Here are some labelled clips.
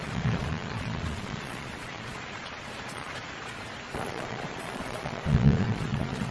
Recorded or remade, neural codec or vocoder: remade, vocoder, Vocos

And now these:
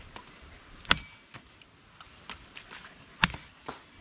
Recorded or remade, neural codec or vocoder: recorded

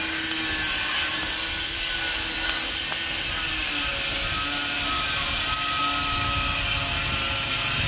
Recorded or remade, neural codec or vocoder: recorded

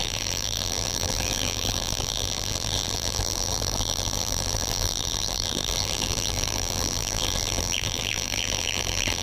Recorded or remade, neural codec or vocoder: remade, vocoder, BigVGAN v2